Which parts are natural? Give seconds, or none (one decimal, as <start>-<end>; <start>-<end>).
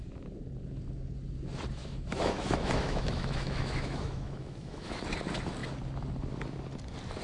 0.0-1.8; 5.0-7.2